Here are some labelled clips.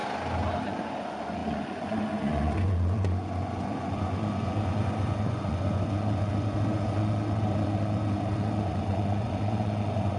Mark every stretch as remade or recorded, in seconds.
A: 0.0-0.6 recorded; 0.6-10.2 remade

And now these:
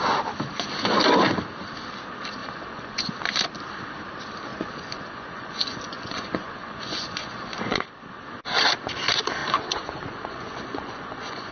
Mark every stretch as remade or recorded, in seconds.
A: 0.0-2.4 recorded; 2.4-3.1 remade; 3.1-4.5 recorded; 4.5-7.8 remade; 7.8-9.4 recorded; 9.4-11.5 remade